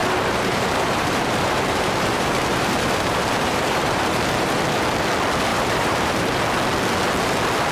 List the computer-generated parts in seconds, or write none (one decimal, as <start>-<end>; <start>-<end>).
0.0-4.6; 5.5-6.4